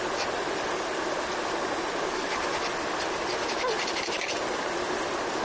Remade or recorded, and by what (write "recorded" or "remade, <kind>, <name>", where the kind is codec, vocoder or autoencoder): recorded